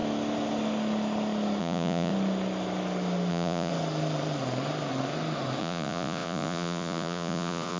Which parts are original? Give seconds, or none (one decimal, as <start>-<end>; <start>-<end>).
0.0-1.6; 2.1-3.3; 3.7-5.6